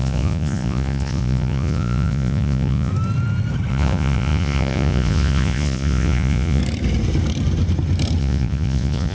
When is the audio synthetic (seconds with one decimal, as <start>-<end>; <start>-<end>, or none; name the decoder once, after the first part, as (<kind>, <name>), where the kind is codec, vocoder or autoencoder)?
0.0-2.9 (vocoder, Vocos); 3.7-6.6; 8.2-9.1